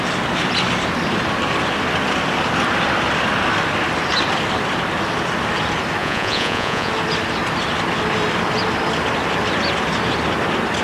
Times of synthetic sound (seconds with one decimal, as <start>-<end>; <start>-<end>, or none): 6.0-6.9